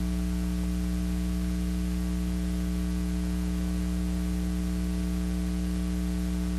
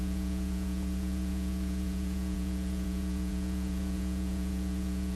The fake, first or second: second